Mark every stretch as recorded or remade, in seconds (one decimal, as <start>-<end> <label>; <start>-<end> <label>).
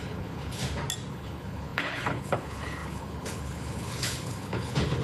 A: 0.0-0.6 remade; 0.6-1.1 recorded; 1.1-5.0 remade